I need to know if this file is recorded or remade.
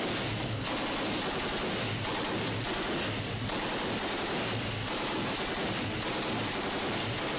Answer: recorded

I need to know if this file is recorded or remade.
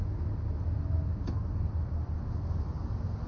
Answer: recorded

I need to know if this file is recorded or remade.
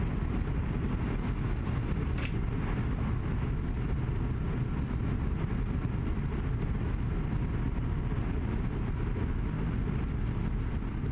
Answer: recorded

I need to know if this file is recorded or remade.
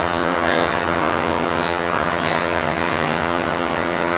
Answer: remade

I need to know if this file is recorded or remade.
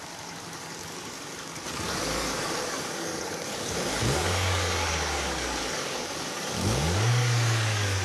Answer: remade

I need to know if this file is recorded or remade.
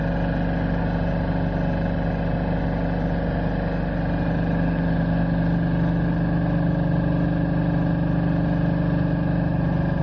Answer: recorded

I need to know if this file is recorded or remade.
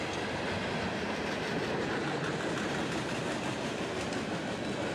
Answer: recorded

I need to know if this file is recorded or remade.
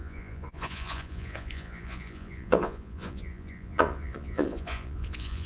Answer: remade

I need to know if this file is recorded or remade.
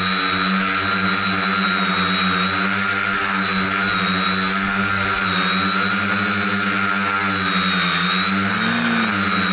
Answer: recorded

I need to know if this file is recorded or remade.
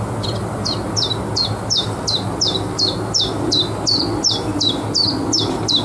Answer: recorded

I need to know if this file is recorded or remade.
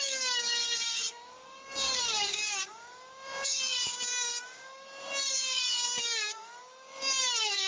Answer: remade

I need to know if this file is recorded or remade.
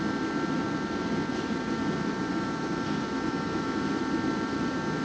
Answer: remade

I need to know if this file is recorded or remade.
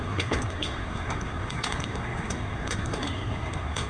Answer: remade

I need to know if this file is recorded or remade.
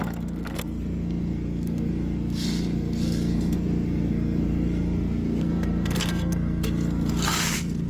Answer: remade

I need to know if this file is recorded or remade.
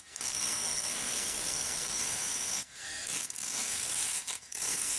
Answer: remade